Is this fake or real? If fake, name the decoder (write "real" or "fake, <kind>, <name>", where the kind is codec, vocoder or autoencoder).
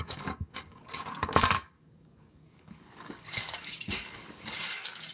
fake, codec, DAC